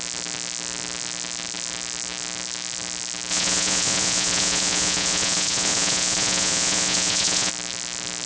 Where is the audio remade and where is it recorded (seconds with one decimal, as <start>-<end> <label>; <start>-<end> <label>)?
0.0-3.3 recorded; 3.3-7.5 remade; 7.5-8.3 recorded